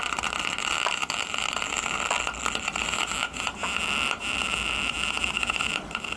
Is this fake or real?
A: real